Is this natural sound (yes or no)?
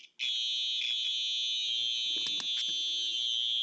yes